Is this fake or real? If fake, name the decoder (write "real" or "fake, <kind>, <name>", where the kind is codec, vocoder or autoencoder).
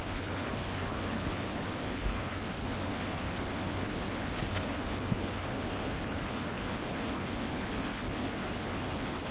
fake, codec, HILCodec